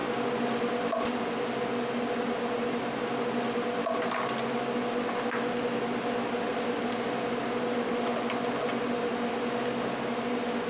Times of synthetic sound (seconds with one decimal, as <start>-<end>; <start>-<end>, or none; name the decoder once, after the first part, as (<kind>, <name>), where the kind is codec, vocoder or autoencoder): 0.0-2.8 (vocoder, BigVGAN v2)

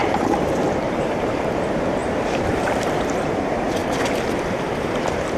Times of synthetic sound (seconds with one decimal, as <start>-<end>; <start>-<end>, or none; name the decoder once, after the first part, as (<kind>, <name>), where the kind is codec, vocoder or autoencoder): 0.0-3.8 (vocoder, BigVGAN v2); 4.8-5.4

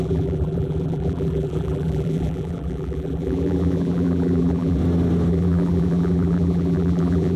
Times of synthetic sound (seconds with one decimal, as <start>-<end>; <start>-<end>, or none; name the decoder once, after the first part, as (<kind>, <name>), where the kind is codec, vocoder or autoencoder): 0.0-4.8 (vocoder, BigVGAN v2); 5.3-7.4

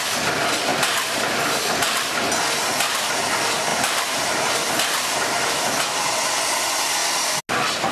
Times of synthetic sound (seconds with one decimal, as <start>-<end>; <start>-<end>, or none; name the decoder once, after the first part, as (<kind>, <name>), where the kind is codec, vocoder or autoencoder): 0.7-2.2 (vocoder, BigVGAN v2); 3.7-4.7